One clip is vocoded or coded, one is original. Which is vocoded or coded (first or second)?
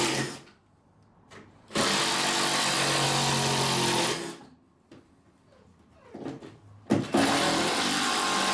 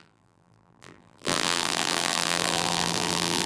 second